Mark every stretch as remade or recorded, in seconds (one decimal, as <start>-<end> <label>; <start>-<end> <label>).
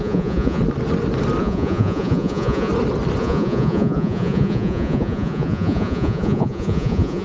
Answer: 0.0-0.6 remade; 0.6-1.4 recorded; 1.4-2.7 remade; 2.7-3.2 recorded; 3.2-7.2 remade